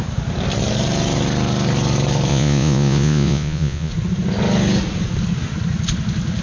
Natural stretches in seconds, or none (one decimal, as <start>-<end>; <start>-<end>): 0.0-2.3; 3.9-6.4